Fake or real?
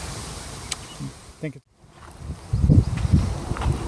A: real